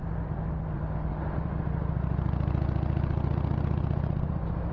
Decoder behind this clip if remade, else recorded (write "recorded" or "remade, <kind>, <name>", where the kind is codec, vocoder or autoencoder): recorded